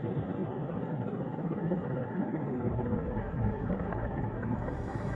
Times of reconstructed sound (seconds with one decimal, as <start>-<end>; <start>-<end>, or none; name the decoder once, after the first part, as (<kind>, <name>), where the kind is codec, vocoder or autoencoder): 0.0-5.2 (codec, SNAC)